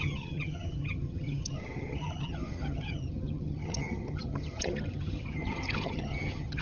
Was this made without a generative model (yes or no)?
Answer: no